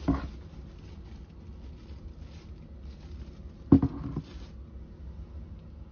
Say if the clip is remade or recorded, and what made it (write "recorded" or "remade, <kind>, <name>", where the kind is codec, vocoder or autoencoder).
recorded